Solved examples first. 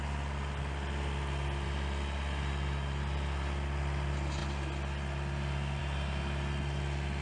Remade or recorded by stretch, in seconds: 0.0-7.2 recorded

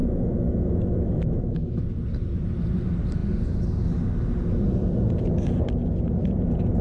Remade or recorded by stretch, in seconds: 0.0-1.8 remade; 1.8-6.8 recorded

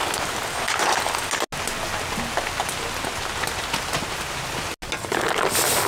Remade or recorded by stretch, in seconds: 0.0-5.9 recorded

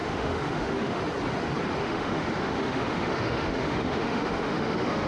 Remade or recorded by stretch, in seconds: 0.0-1.0 remade; 1.0-1.8 recorded; 1.8-5.1 remade

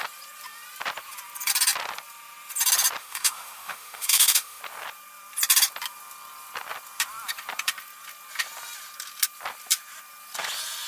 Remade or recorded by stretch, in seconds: 0.0-3.0 recorded; 3.0-4.6 remade; 4.6-10.9 recorded

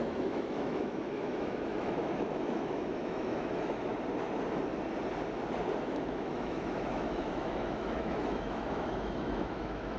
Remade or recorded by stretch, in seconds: 0.0-3.9 remade; 3.9-5.8 recorded; 5.8-10.0 remade

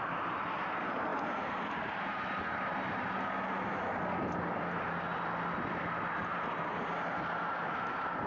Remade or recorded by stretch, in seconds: 0.0-8.3 recorded

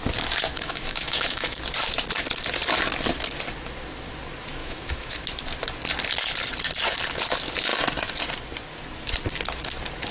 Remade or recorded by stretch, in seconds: 0.0-0.5 recorded; 0.5-1.6 remade; 1.6-4.6 recorded; 4.6-5.1 remade; 5.1-10.1 recorded